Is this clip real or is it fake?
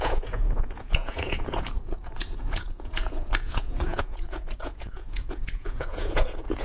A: fake